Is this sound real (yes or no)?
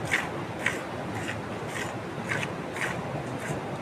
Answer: yes